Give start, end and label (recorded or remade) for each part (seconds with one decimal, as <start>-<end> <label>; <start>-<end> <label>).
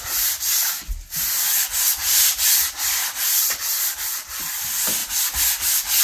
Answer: 0.0-3.0 recorded; 3.0-3.8 remade; 3.8-6.0 recorded